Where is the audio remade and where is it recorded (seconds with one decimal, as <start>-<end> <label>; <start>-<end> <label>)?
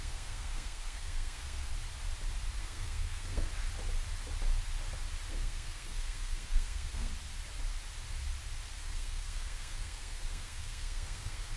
0.0-1.7 remade; 1.7-2.6 recorded; 2.6-3.5 remade; 3.5-5.3 recorded; 5.3-7.1 remade; 7.1-8.8 recorded; 8.8-11.6 remade